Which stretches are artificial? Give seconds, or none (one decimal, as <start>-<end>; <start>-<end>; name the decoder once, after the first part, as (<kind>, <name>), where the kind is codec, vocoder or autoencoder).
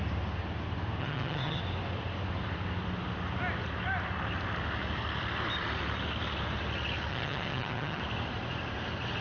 1.0-1.6 (vocoder, HiFi-GAN); 7.1-8.0